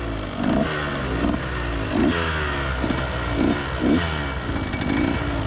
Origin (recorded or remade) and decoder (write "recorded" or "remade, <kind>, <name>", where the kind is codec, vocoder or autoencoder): recorded